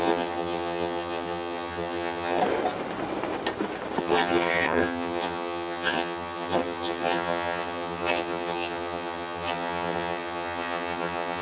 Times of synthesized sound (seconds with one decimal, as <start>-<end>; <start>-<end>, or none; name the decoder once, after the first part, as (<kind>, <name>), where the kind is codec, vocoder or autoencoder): 0.0-2.4 (vocoder, HiFi-GAN); 4.0-11.4